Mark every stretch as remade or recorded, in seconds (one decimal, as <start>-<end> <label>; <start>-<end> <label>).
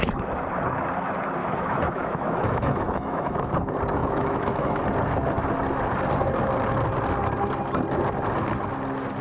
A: 0.0-1.4 recorded; 1.4-3.5 remade; 3.5-4.0 recorded; 4.0-4.8 remade; 4.8-9.2 recorded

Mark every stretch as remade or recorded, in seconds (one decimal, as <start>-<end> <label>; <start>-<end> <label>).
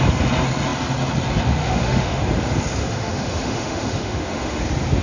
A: 0.0-1.6 recorded; 1.6-2.2 remade; 2.2-2.8 recorded; 2.8-4.6 remade; 4.6-5.0 recorded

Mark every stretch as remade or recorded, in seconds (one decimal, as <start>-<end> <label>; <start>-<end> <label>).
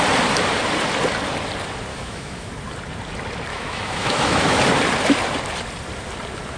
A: 0.0-1.9 recorded; 1.9-2.5 remade; 2.5-3.5 recorded; 3.5-4.6 remade; 4.6-6.6 recorded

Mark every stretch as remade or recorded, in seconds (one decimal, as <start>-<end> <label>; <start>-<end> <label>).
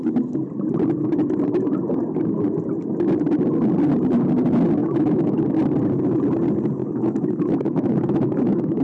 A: 0.0-4.8 recorded; 4.8-5.4 remade; 5.4-6.8 recorded; 6.8-8.8 remade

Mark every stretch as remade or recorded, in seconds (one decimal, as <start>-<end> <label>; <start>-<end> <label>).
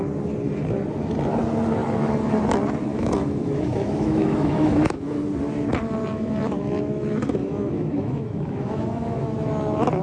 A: 0.0-2.9 recorded; 2.9-5.2 remade; 5.2-6.1 recorded; 6.1-9.5 remade; 9.5-10.0 recorded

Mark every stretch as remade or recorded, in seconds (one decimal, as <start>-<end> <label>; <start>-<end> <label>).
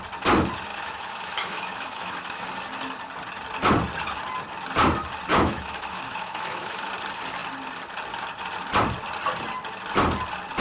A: 0.0-0.7 recorded; 0.7-2.4 remade; 2.4-5.3 recorded; 5.3-6.9 remade; 6.9-10.6 recorded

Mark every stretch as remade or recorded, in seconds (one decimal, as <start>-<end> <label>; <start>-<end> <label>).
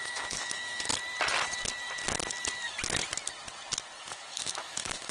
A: 0.0-0.9 remade; 0.9-4.0 recorded; 4.0-5.1 remade